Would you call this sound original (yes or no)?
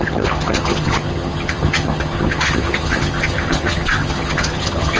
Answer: no